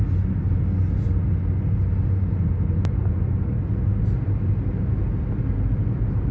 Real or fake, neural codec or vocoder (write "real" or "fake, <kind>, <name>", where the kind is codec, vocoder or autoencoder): real